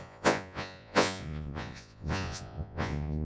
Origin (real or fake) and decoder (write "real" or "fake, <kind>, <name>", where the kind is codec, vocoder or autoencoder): fake, vocoder, Vocos